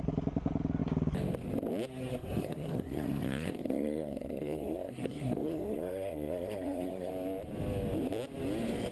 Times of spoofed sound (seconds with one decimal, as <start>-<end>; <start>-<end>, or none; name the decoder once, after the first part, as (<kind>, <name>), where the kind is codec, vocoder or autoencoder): 2.1-7.1 (codec, SNAC)